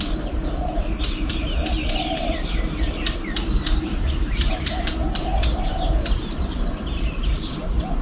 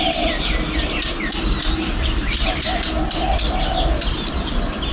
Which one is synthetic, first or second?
first